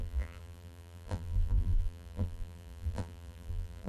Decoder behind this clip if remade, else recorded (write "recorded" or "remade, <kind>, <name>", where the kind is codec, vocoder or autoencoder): remade, vocoder, BigVGAN v2